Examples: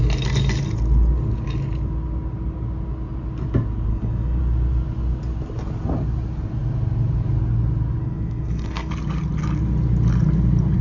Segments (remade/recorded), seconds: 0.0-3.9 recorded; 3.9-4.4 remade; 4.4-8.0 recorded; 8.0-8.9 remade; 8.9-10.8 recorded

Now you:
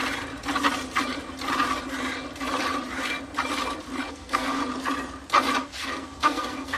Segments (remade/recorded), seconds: 0.0-4.1 recorded; 4.1-4.6 remade; 4.6-5.6 recorded; 5.6-6.8 remade

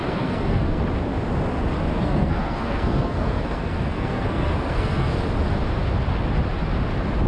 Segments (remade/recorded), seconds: 0.0-0.8 remade; 0.8-1.9 recorded; 1.9-5.2 remade; 5.2-7.3 recorded

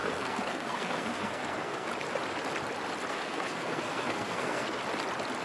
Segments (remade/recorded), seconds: 0.0-1.9 remade; 1.9-3.1 recorded; 3.1-4.8 remade; 4.8-5.4 recorded